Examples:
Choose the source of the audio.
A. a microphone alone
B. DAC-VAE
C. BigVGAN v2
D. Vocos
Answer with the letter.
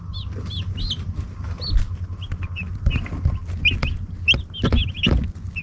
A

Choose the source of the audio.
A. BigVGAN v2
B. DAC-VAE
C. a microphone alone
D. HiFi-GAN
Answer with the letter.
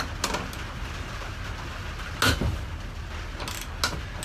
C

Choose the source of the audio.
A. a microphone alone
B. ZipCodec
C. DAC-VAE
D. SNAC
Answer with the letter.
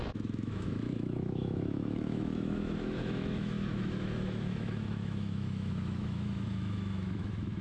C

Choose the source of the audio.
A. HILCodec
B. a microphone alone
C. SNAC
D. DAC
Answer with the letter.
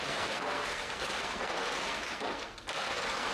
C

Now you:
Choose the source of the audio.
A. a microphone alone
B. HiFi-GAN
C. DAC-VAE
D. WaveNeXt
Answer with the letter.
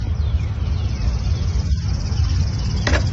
A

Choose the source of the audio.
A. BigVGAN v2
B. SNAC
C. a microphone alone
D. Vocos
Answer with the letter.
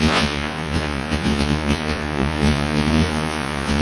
D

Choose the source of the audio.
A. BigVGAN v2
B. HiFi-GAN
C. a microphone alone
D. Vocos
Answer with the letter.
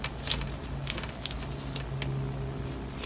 C